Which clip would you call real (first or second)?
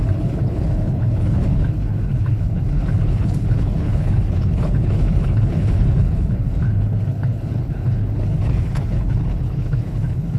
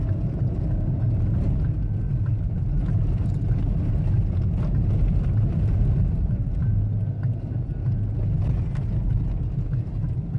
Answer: second